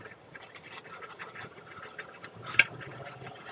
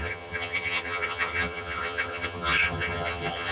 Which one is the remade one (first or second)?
second